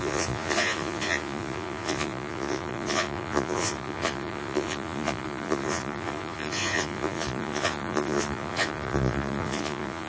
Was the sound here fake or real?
fake